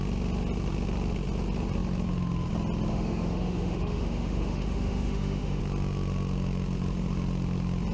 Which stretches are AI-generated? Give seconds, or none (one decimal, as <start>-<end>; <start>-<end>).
2.9-5.6